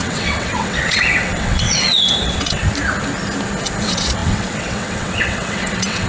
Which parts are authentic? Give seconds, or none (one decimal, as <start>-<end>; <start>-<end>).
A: 2.6-3.8